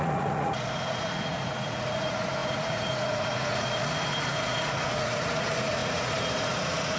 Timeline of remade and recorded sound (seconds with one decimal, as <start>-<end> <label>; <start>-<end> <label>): 0.0-7.0 remade